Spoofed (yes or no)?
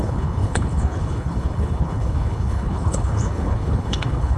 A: yes